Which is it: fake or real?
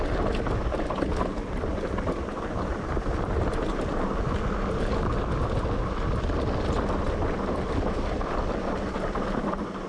real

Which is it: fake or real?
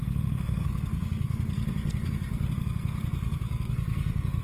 fake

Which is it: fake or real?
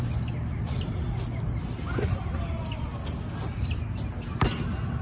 real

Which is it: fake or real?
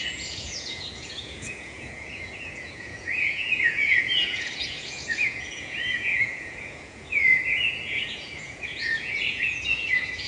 fake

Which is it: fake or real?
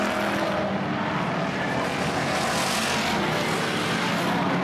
real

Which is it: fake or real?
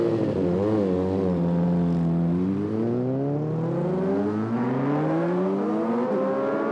real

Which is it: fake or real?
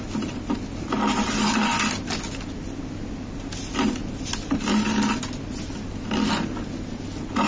real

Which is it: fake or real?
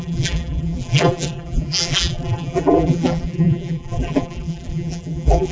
fake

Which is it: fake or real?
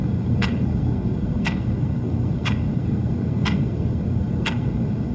fake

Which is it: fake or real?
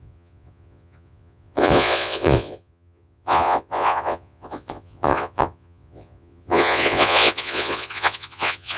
fake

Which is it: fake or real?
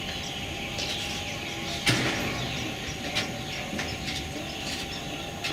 real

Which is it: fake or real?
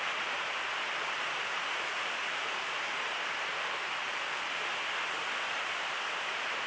real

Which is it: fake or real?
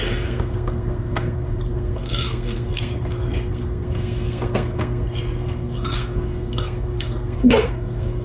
fake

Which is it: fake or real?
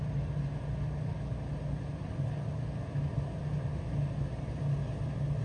real